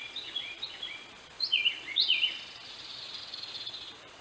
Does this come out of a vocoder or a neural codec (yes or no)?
yes